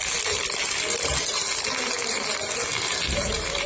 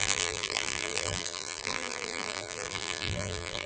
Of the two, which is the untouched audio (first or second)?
first